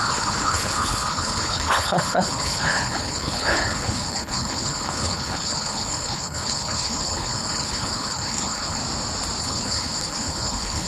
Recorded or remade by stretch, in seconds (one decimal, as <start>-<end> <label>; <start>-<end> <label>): 0.0-8.8 remade; 8.8-9.4 recorded; 9.4-10.9 remade